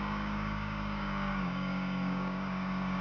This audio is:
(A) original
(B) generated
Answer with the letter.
B